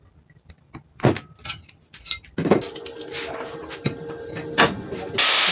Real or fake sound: real